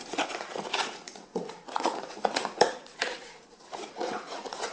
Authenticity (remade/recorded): remade